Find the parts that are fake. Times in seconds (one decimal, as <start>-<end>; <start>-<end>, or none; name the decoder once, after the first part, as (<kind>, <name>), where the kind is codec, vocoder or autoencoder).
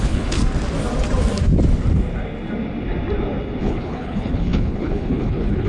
0.0-0.4 (codec, HILCodec); 3.6-5.7